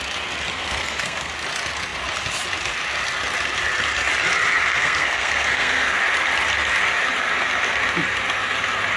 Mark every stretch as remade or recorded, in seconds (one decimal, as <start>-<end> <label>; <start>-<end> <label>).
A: 0.0-0.5 recorded; 0.5-1.3 remade; 1.3-4.6 recorded; 4.6-6.0 remade; 6.0-9.0 recorded